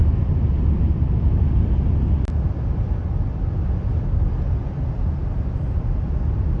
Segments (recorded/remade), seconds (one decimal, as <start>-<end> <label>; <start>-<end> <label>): 0.0-6.6 recorded